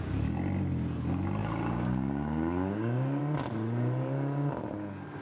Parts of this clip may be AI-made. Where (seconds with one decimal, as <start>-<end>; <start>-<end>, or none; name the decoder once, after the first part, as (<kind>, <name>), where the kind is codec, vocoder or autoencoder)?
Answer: 1.4-3.2 (codec, DAC)